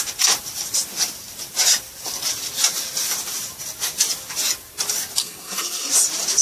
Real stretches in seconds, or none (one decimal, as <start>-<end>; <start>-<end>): 0.0-5.2; 5.9-6.4